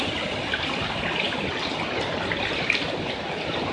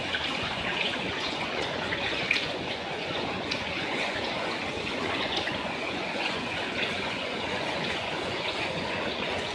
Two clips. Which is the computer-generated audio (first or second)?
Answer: second